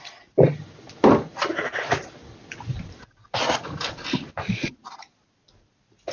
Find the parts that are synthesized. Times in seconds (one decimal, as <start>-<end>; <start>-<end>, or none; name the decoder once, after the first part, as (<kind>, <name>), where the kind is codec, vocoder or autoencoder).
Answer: none